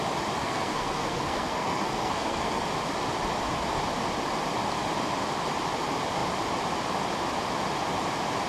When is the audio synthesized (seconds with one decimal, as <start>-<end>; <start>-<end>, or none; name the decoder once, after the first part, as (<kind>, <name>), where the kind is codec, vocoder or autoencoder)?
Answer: 0.4-2.6 (codec, SNAC)